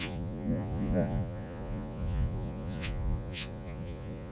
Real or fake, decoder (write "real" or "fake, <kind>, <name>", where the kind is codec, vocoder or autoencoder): fake, vocoder, Vocos